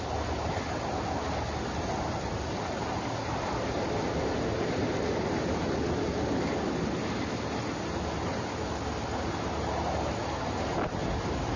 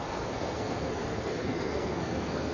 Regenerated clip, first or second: second